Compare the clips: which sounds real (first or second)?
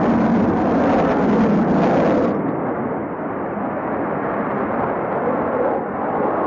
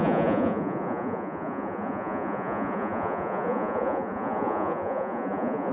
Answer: first